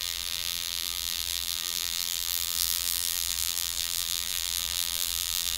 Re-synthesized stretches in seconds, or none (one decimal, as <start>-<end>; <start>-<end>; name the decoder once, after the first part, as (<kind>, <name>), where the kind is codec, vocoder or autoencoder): 0.0-5.6 (vocoder, BigVGAN v2)